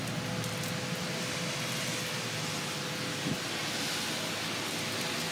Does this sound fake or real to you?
real